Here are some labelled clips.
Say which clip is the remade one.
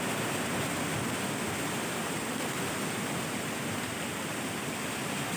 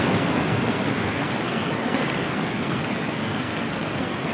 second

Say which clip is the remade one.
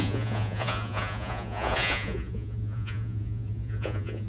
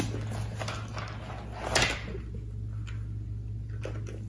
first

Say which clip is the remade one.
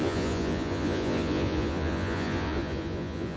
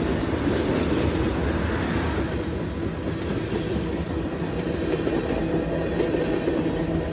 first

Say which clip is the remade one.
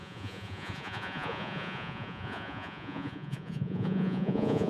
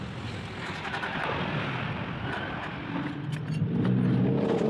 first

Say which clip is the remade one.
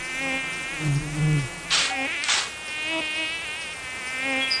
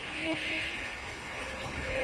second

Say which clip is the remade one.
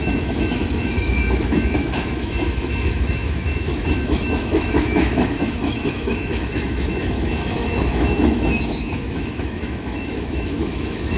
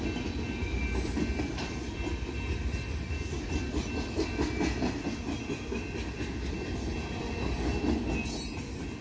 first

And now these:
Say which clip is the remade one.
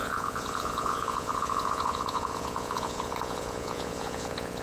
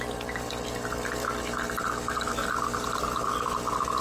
first